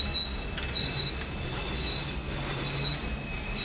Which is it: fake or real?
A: real